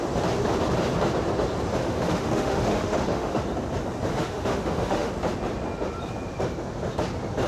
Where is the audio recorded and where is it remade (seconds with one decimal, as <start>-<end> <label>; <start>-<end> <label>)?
0.0-1.8 recorded; 1.8-3.4 remade; 3.4-4.1 recorded; 4.1-5.1 remade; 5.1-7.5 recorded